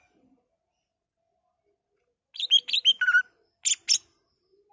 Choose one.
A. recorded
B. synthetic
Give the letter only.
A